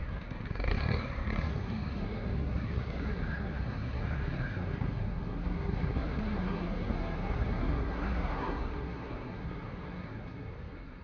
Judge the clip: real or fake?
fake